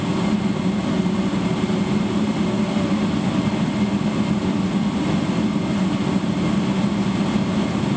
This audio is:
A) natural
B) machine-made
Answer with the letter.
A